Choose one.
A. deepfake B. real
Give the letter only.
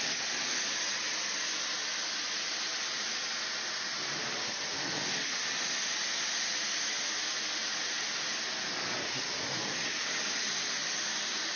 B